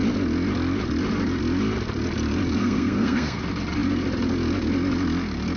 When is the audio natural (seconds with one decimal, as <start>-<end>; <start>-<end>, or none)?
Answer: 0.0-2.6; 3.4-5.6

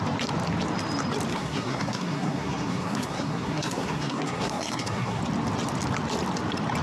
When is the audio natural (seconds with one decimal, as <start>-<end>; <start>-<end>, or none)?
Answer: 0.0-1.3; 5.2-6.8

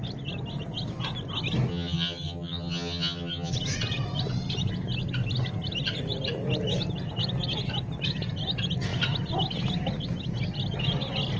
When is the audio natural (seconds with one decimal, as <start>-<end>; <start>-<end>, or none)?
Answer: 0.0-1.7; 3.5-11.4

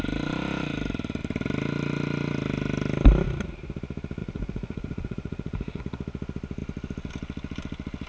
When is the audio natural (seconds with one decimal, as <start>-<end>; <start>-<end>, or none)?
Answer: 0.0-4.2; 5.8-8.1

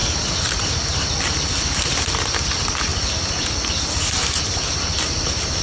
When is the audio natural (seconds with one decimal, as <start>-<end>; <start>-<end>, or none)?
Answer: 0.0-5.6

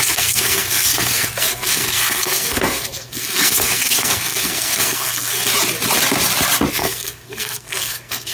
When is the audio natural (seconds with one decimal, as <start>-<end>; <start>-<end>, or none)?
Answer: 5.5-6.7

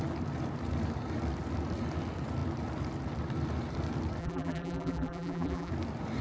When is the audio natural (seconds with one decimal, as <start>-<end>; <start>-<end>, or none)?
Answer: 0.0-4.2; 5.7-6.2

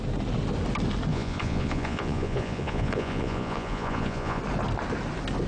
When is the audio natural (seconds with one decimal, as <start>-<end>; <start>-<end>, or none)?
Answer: 0.0-1.1; 4.4-5.5